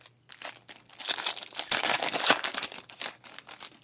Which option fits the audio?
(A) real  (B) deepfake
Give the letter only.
A